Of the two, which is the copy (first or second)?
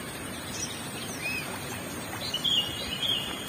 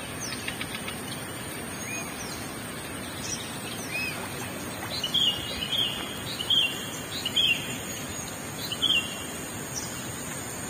first